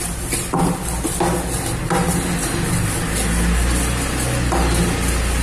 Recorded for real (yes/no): yes